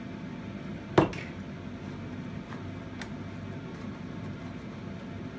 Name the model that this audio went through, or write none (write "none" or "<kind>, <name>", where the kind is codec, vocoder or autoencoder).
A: none